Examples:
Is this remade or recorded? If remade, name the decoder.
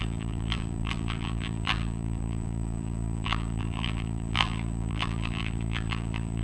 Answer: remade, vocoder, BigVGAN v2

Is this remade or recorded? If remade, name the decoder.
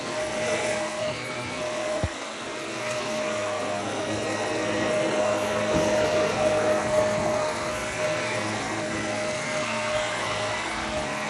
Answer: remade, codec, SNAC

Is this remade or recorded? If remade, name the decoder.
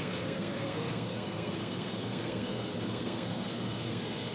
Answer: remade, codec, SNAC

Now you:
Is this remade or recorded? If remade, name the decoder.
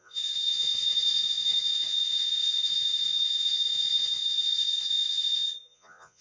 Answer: remade, vocoder, Vocos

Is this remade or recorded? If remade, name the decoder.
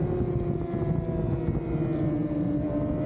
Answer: recorded